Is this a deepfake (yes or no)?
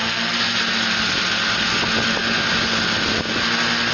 no